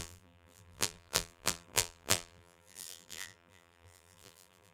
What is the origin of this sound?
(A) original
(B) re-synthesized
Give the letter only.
B